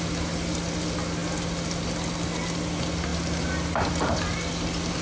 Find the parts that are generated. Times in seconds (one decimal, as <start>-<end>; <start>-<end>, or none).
none